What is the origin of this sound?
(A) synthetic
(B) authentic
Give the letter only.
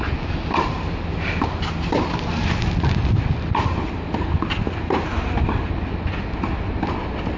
B